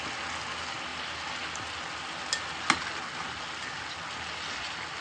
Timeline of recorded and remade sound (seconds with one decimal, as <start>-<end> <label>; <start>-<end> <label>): 0.0-5.0 recorded